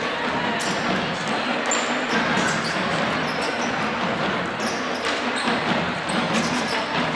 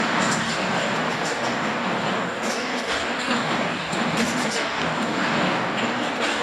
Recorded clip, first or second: first